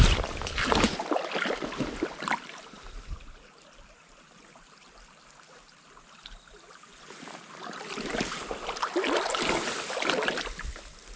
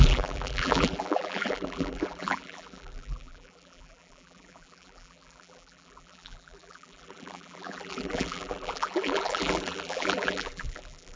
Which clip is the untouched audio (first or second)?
first